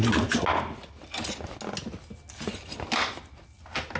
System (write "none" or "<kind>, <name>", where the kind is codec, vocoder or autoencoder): none